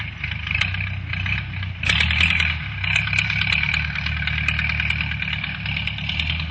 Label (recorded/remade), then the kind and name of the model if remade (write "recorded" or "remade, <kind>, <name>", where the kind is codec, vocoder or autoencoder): recorded